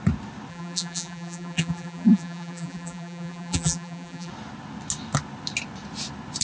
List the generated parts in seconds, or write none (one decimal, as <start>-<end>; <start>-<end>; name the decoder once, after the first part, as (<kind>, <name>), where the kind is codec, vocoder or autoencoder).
0.5-4.3 (vocoder, BigVGAN v2)